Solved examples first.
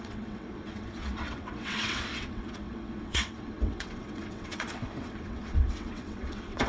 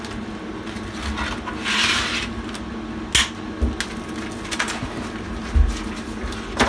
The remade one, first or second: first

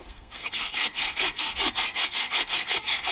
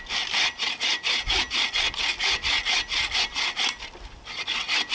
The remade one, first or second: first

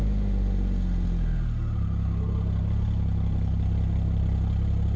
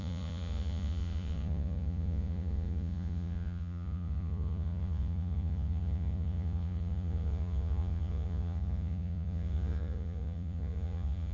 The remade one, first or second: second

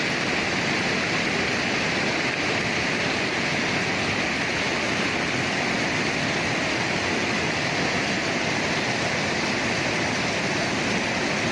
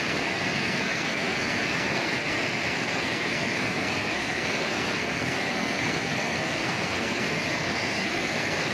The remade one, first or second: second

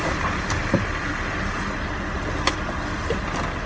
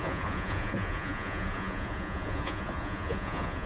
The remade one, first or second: second